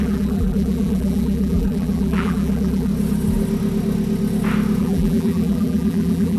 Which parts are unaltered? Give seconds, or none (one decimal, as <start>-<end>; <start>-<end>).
2.9-4.8